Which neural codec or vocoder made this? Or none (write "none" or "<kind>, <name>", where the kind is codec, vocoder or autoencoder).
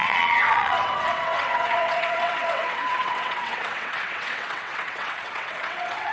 vocoder, WaveNeXt